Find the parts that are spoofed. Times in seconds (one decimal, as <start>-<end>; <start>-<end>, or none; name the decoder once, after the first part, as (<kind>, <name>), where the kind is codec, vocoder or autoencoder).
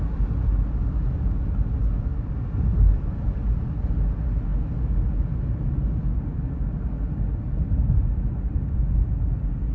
2.1-4.0 (vocoder, BigVGAN v2)